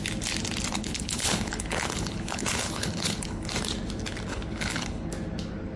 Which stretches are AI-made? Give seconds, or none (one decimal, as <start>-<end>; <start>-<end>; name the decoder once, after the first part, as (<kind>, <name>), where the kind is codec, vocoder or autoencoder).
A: 0.7-3.5 (codec, HILCodec); 4.3-5.1